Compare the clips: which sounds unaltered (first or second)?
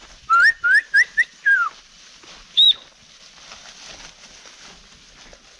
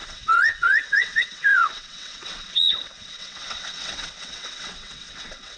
first